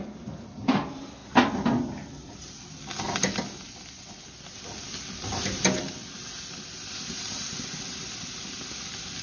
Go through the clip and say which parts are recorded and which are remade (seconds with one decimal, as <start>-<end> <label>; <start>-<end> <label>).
0.0-9.2 recorded